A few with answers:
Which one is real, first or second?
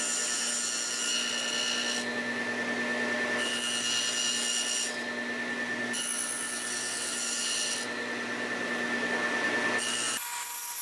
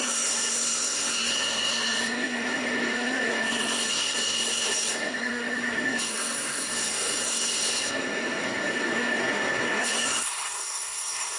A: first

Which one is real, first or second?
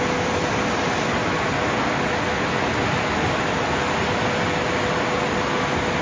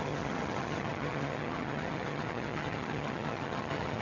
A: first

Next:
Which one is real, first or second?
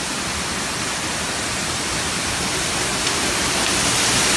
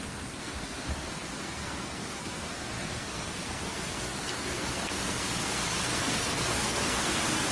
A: first